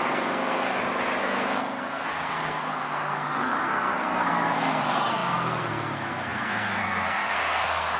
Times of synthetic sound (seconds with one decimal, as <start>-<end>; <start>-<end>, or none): 0.0-0.7; 1.2-8.0